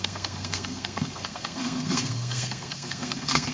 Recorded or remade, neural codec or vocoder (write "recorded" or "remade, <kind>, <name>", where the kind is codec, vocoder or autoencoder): remade, codec, SNAC